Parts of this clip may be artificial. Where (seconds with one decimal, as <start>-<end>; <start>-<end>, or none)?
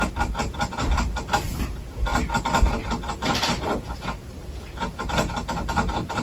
none